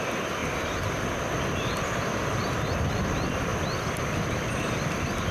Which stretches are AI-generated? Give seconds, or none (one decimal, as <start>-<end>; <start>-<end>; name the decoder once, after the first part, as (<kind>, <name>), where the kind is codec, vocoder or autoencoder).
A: none